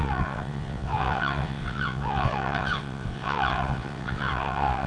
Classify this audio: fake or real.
fake